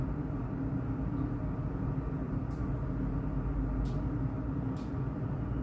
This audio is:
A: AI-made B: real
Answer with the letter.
B